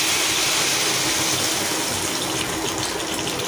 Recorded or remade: recorded